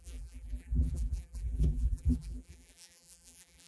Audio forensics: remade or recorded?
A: remade